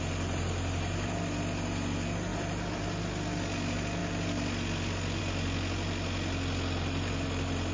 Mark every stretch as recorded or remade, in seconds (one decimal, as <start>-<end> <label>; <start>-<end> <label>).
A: 0.0-7.7 recorded

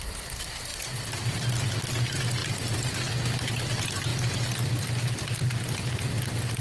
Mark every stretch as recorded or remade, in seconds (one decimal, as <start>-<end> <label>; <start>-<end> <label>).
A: 0.0-6.6 recorded

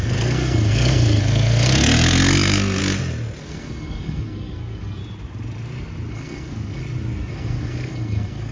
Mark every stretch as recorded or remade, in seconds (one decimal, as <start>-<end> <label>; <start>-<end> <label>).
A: 0.0-2.8 remade; 2.8-3.4 recorded; 3.4-5.0 remade; 5.0-6.1 recorded; 6.1-6.8 remade; 6.8-7.3 recorded; 7.3-8.5 remade